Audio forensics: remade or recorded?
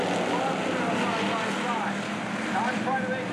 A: recorded